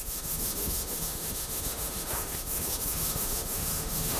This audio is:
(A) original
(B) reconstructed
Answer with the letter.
B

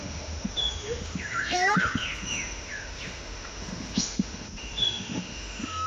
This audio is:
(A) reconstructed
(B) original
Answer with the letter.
A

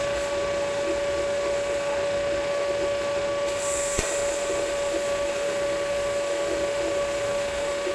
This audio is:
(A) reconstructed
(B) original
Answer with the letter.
A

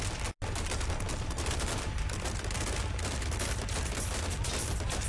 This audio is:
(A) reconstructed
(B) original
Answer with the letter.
B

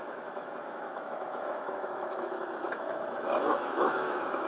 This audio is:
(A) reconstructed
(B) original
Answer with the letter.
A